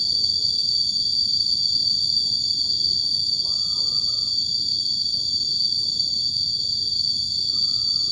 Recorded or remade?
remade